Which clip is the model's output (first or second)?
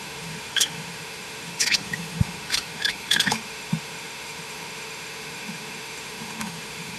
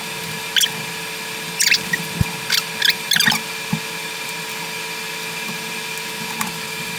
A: first